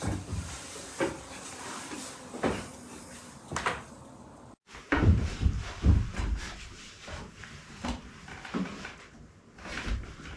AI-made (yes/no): yes